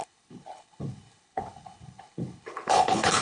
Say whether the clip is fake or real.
fake